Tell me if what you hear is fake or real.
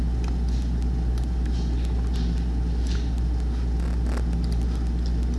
real